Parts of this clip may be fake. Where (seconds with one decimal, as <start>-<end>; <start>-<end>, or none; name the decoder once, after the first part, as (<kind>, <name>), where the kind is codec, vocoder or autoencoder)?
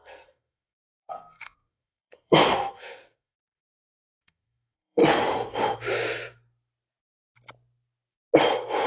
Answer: 0.0-5.0 (codec, SNAC)